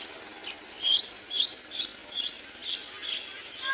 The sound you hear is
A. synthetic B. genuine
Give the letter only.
B